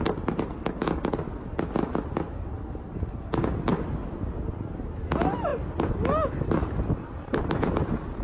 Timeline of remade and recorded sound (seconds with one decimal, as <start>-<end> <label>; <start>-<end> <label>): 0.0-8.2 recorded